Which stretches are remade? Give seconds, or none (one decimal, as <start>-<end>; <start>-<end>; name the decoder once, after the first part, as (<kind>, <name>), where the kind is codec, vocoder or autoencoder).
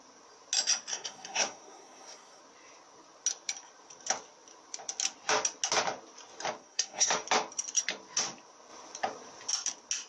0.9-2.4 (codec, SNAC); 6.6-7.1